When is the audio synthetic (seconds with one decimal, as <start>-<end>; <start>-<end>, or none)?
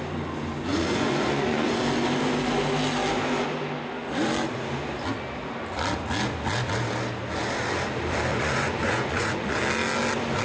0.7-1.7; 8.3-9.6